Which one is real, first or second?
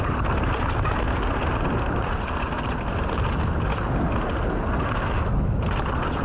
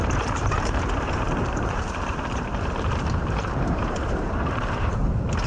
first